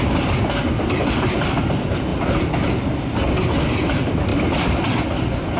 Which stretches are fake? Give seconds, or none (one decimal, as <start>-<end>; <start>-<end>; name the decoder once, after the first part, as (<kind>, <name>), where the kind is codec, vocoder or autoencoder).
none